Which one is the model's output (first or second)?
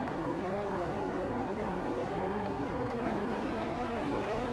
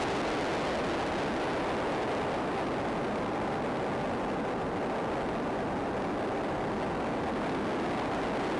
first